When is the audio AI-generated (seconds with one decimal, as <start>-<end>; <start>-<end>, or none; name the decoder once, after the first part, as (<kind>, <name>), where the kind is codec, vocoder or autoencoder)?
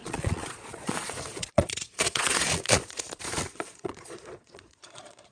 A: 0.0-5.3 (vocoder, Vocos)